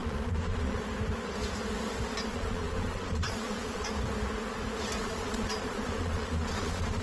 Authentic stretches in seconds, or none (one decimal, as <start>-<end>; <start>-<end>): 0.8-2.3; 3.9-5.0